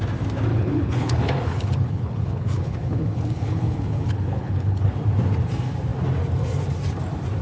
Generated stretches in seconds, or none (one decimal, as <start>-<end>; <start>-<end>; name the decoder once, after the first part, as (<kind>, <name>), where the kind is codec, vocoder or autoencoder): 0.5-4.9 (codec, HILCodec)